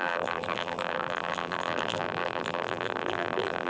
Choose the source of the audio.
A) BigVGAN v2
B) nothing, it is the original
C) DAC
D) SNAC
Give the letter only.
A